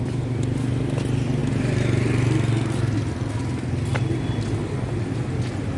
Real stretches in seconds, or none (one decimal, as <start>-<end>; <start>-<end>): 0.0-5.8